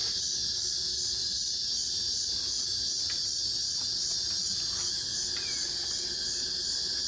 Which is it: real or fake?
real